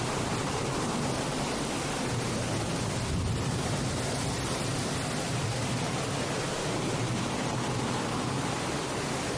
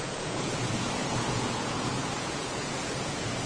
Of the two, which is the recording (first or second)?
first